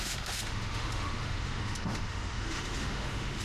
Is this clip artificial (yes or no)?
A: yes